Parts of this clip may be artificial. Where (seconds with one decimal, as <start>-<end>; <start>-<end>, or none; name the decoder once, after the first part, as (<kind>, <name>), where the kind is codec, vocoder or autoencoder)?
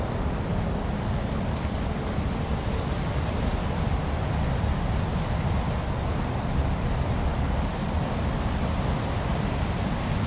none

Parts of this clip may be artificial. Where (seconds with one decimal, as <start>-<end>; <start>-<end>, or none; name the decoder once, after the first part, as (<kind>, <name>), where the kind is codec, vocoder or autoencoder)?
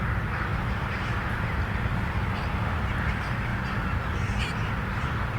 0.0-5.4 (vocoder, BigVGAN v2)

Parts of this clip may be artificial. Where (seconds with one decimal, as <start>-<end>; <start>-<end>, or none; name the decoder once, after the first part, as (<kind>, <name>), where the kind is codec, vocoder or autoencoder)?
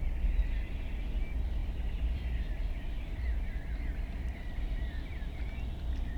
1.6-5.2 (vocoder, BigVGAN v2)